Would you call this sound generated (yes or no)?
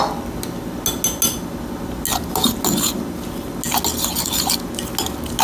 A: no